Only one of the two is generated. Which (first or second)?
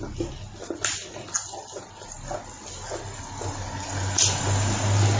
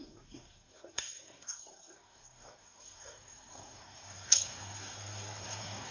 second